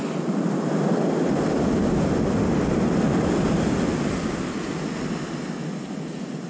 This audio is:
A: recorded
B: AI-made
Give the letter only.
A